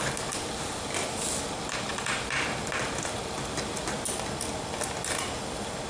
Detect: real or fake real